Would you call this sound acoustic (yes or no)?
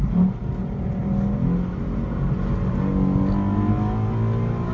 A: yes